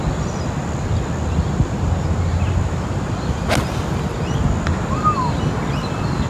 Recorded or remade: recorded